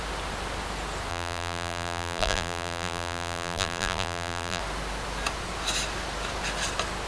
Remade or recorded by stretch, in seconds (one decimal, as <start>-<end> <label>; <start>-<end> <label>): 0.0-1.1 recorded; 1.1-4.6 remade; 4.6-7.1 recorded